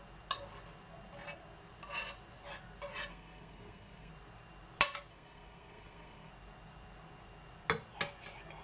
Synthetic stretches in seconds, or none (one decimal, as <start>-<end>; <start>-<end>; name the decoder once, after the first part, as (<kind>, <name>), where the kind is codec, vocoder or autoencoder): 3.1-4.1 (codec, SNAC); 5.1-6.3